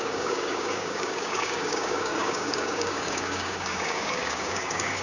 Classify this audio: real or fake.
fake